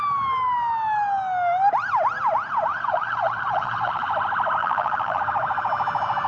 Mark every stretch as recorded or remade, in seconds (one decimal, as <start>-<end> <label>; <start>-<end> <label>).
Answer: 0.0-2.7 recorded; 2.7-4.1 remade; 4.1-4.6 recorded; 4.6-5.2 remade; 5.2-6.3 recorded